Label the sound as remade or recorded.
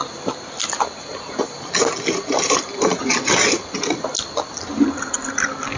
recorded